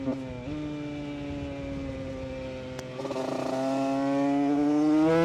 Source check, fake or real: real